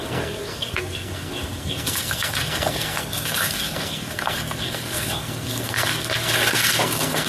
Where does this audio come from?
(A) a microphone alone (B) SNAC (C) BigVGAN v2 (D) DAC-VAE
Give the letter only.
B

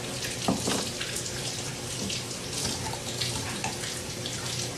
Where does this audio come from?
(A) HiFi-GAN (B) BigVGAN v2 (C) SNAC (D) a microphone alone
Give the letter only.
D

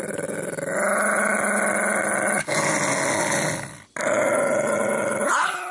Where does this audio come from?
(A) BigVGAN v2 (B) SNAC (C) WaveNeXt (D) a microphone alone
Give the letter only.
D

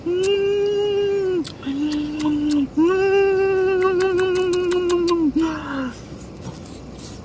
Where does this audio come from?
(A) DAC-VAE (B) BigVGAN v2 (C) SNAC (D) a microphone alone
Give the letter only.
D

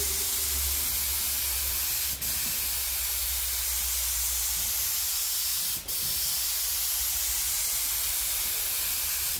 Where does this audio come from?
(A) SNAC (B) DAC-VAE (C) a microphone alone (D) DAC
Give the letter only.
C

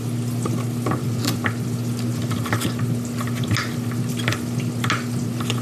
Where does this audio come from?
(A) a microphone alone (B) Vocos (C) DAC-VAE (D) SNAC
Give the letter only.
A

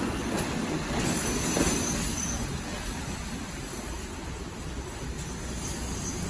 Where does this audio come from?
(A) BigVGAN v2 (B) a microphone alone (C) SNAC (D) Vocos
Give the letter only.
B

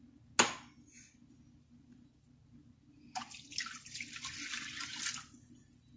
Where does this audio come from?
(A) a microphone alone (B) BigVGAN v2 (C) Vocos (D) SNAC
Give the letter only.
A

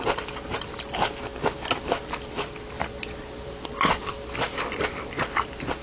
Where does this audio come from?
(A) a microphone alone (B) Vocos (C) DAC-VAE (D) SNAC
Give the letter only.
A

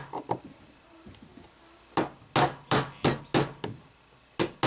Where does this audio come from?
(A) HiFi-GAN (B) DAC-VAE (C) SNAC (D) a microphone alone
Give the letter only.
D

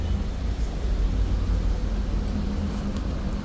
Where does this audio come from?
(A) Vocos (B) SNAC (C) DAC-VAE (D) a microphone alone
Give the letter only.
D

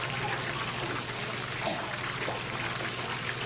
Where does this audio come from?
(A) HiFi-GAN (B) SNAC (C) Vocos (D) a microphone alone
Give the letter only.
D